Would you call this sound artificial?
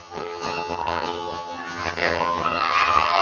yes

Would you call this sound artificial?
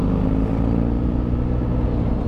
no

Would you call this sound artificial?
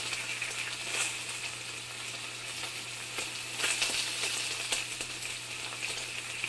no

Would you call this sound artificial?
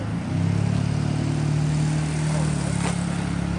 no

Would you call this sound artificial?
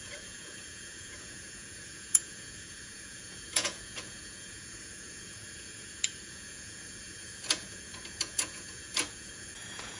yes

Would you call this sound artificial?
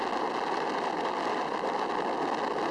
no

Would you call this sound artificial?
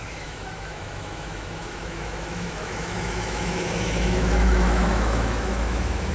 yes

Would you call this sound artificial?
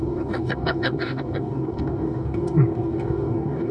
yes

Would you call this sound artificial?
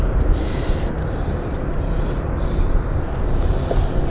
no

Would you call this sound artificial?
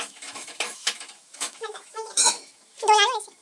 yes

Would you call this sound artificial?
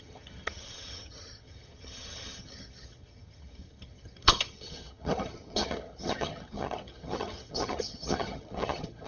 yes